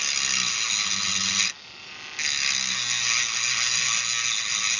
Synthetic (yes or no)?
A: no